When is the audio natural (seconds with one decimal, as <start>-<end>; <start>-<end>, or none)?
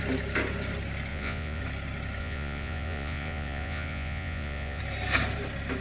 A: 0.0-1.1; 1.6-2.2; 4.8-5.8